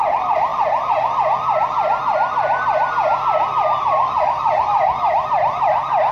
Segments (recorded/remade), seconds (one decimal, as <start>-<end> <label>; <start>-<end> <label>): 0.0-6.1 recorded